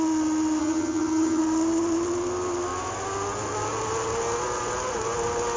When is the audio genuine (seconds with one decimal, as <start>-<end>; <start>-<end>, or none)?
0.0-0.6; 1.4-5.6